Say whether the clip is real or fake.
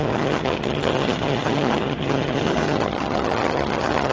fake